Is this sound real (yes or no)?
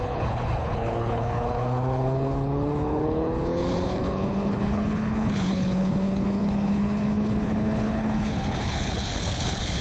no